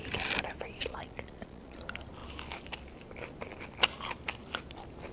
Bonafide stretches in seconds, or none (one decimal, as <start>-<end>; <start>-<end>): 0.0-0.8; 1.8-5.1